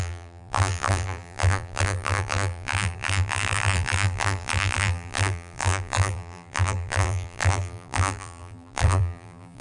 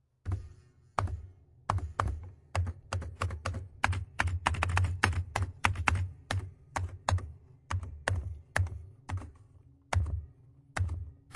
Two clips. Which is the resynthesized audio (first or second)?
first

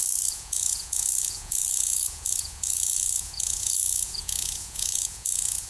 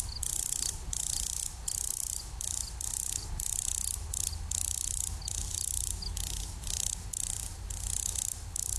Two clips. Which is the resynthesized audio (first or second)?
first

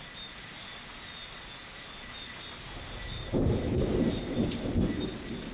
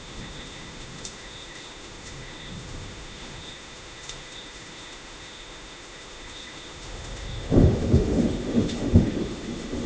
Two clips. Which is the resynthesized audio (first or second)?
second